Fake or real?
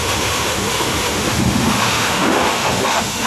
fake